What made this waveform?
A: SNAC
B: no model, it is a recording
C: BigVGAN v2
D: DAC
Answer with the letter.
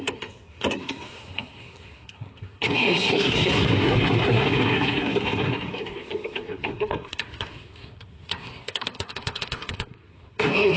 A